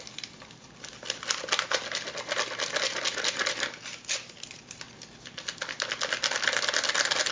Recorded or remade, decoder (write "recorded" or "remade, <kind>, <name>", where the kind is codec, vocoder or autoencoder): recorded